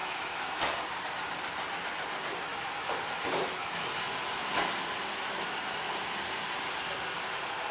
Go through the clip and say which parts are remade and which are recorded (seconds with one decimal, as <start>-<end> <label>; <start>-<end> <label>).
0.0-0.6 remade; 0.6-2.5 recorded; 2.5-4.0 remade; 4.0-7.7 recorded